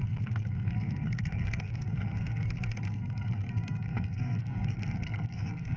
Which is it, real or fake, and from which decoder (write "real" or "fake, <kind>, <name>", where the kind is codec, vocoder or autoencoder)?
fake, codec, SNAC